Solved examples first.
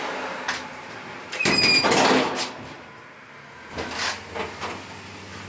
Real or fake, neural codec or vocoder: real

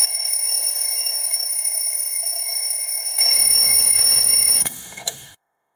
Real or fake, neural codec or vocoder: fake, autoencoder, DAC-VAE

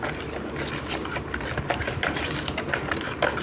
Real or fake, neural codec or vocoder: real